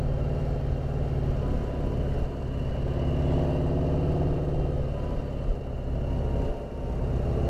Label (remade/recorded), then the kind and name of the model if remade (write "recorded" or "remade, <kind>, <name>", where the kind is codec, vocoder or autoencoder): recorded